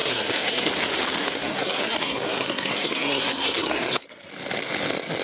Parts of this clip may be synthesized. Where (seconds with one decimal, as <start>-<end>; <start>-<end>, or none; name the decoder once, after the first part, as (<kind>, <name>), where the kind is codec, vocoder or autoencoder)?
0.0-0.7 (codec, SNAC); 1.2-4.3